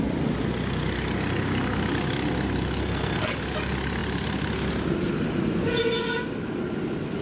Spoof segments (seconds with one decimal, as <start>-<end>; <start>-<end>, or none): 2.8-3.3